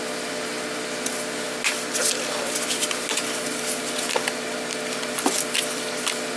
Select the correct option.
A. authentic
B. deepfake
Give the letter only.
A